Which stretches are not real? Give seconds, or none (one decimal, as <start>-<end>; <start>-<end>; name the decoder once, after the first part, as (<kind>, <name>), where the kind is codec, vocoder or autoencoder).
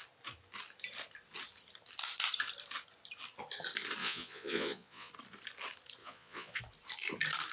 4.0-5.1 (vocoder, Vocos); 6.0-6.6